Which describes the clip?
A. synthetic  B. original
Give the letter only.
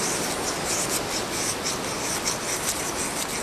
B